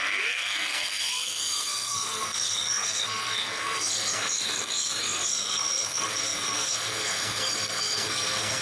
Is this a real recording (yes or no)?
no